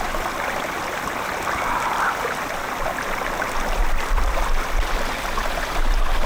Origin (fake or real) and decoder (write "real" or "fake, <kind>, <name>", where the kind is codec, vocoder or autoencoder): real